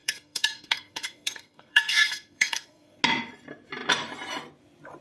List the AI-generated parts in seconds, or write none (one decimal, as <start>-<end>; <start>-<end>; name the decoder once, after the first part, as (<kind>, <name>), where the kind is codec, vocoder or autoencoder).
0.0-3.0 (codec, SNAC)